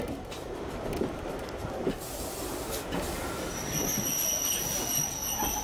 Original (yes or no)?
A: yes